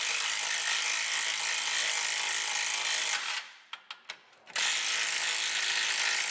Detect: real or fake real